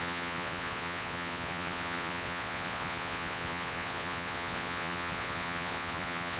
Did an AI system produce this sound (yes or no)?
yes